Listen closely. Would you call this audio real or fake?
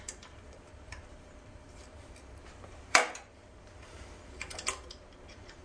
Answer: fake